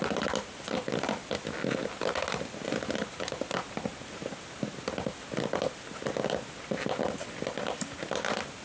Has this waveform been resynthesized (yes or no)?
no